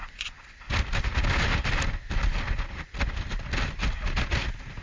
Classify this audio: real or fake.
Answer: real